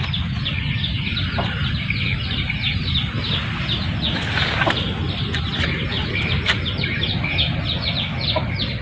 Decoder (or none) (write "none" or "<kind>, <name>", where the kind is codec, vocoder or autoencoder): none